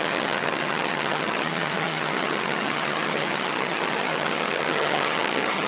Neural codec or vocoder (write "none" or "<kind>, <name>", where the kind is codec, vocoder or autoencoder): vocoder, HiFi-GAN